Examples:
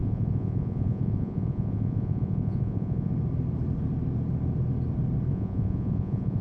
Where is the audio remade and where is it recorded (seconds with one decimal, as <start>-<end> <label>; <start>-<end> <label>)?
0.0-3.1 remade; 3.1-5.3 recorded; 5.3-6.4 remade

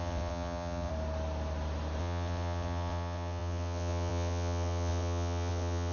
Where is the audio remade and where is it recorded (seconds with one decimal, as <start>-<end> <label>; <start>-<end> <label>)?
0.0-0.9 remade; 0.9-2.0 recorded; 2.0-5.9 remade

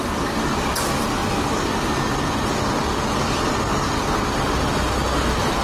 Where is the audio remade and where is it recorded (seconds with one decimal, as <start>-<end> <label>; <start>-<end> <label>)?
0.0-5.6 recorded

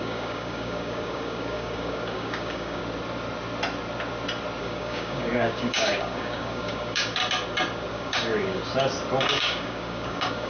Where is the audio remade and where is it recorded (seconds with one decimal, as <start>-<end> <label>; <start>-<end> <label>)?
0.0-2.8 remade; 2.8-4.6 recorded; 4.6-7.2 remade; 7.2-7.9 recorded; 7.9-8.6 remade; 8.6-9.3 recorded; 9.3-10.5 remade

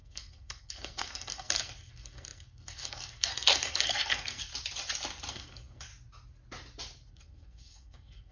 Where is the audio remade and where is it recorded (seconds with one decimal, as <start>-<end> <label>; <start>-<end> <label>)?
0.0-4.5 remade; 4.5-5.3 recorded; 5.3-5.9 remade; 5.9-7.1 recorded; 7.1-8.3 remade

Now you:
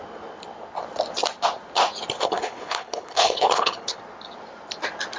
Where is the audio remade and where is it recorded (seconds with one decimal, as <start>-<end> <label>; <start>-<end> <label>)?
0.0-2.2 recorded; 2.2-4.0 remade; 4.0-5.2 recorded

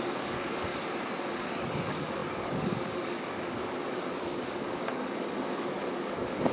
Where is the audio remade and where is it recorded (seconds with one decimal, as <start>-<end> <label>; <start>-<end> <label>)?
0.0-0.7 remade; 0.7-1.3 recorded; 1.3-6.5 remade